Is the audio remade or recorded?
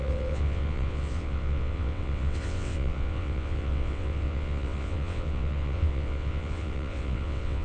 remade